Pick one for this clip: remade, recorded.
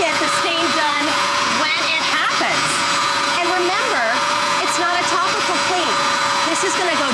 remade